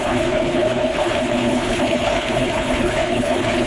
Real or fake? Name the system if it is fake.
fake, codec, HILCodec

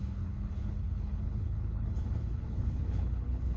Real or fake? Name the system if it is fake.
fake, codec, HILCodec